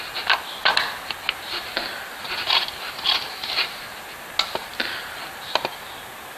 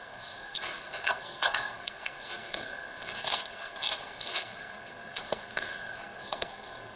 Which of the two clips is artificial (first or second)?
second